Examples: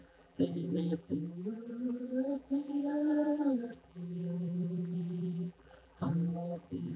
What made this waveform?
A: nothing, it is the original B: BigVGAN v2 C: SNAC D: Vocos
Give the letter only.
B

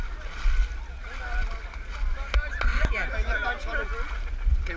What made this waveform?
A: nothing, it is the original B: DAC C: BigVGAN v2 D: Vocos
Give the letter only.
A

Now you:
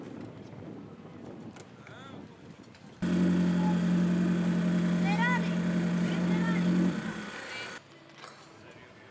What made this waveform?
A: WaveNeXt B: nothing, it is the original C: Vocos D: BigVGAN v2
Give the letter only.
B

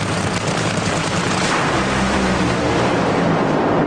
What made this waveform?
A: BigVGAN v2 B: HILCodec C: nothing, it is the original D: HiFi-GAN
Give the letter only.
A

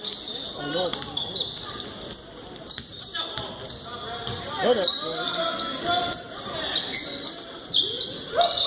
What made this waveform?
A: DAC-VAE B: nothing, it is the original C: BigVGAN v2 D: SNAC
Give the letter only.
B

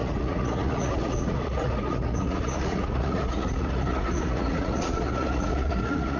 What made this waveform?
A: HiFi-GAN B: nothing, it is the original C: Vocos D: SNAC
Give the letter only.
C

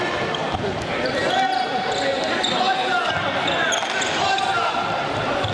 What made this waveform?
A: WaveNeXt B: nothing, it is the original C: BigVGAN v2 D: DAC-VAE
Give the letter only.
B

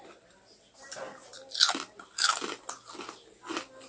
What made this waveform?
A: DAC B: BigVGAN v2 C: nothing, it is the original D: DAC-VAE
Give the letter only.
C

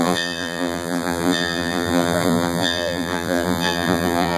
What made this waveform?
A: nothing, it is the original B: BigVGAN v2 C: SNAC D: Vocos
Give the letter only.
B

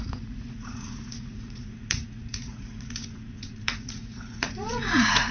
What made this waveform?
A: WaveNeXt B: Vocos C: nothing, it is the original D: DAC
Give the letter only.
B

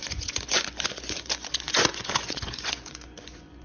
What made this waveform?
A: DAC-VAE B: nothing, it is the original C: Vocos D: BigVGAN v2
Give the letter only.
C